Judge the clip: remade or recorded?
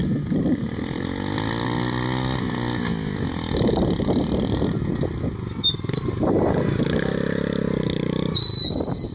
recorded